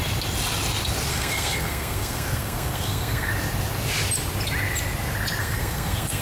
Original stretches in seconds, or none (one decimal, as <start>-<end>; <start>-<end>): 0.0-1.1; 3.3-5.4